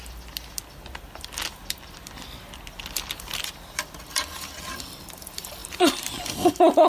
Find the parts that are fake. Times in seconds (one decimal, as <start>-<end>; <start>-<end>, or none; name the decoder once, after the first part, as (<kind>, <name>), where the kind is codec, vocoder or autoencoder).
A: none